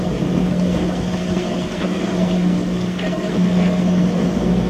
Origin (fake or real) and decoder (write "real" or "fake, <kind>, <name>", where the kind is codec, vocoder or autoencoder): fake, codec, SNAC